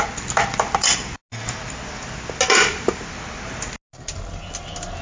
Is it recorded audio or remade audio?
recorded